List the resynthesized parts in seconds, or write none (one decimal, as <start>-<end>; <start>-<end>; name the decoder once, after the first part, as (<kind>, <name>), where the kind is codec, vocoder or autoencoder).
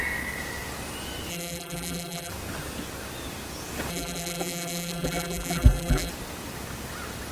1.3-2.3 (vocoder, BigVGAN v2); 3.9-6.1